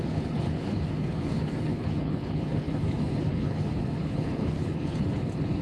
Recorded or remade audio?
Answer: remade